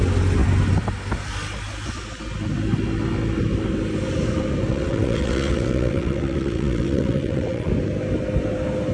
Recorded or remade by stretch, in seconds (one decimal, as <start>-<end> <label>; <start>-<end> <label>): 0.0-4.7 recorded; 4.7-7.7 remade; 7.7-8.9 recorded